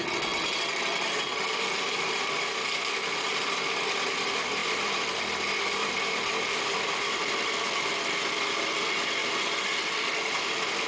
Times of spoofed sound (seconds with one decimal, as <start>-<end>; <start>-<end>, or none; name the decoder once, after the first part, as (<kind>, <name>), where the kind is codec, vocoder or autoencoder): 0.7-9.2 (vocoder, BigVGAN v2); 9.9-10.9